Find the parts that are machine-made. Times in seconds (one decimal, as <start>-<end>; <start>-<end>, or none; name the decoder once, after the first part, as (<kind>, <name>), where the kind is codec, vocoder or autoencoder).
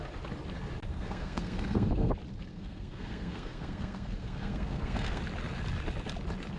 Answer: 0.9-2.1 (codec, SNAC); 2.5-5.2